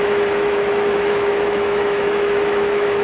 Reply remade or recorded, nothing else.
remade